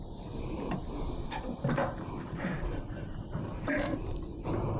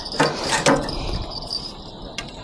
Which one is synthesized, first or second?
first